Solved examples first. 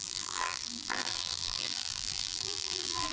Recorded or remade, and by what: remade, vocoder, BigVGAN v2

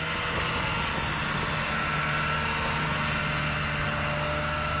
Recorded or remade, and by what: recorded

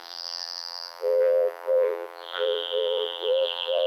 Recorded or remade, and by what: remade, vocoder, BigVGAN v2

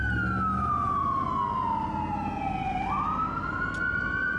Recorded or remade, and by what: recorded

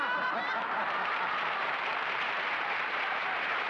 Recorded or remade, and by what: remade, vocoder, BigVGAN v2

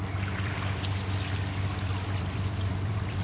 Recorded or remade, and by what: remade, vocoder, BigVGAN v2